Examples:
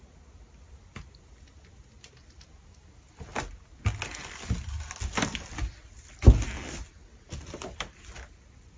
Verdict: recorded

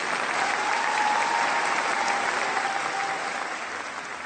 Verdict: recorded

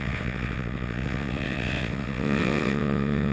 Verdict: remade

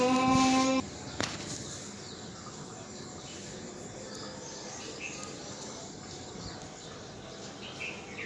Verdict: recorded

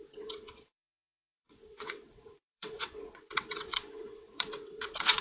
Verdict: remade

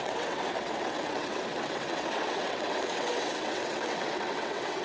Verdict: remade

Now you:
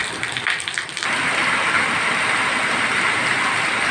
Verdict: recorded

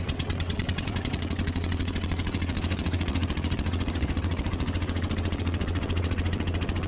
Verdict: remade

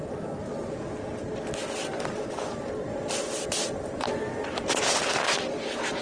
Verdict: recorded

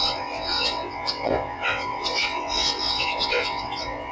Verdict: remade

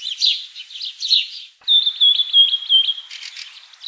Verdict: recorded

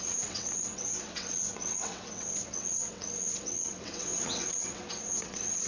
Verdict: remade